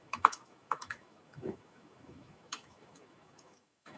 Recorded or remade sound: remade